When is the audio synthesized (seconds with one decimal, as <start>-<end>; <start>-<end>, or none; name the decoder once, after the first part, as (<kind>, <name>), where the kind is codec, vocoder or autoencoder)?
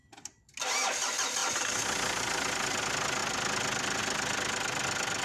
none